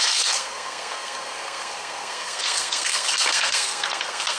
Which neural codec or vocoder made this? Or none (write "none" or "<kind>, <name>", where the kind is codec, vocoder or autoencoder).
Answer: codec, SNAC